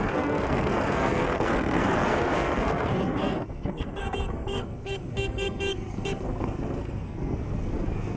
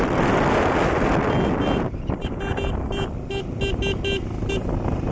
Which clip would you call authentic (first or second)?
second